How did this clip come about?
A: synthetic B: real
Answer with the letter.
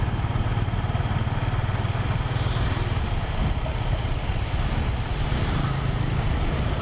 B